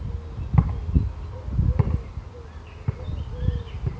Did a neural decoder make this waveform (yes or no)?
no